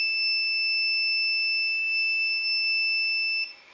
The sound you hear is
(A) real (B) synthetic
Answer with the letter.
A